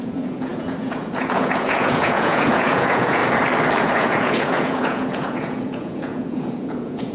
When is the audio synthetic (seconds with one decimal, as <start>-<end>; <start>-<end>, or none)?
0.0-3.2; 3.8-7.1